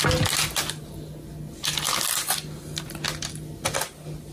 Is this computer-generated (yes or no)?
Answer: no